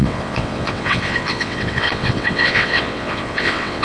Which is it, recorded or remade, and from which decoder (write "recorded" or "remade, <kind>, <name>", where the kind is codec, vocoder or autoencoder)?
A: remade, vocoder, WaveNeXt